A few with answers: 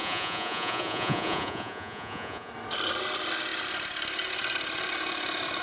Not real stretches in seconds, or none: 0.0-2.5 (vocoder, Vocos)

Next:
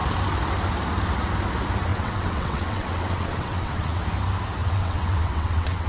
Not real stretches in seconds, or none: 1.9-4.0 (vocoder, WaveNeXt); 4.6-5.9

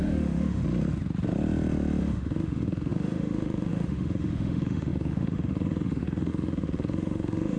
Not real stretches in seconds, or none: 0.0-0.6 (autoencoder, DAC-VAE); 2.0-7.6